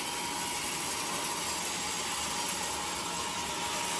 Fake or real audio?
real